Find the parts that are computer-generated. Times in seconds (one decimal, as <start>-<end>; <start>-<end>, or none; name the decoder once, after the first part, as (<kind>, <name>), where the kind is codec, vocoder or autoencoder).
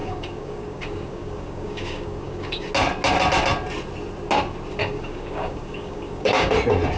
0.0-2.7 (codec, DAC); 4.8-6.5